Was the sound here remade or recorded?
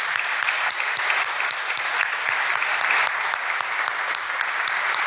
recorded